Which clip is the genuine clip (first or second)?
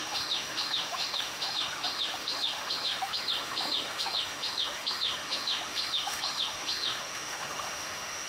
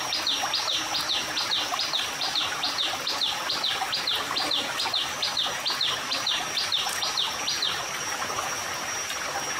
second